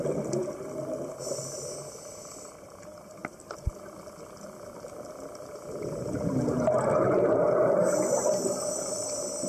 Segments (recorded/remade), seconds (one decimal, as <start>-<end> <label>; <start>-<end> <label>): 0.0-9.5 recorded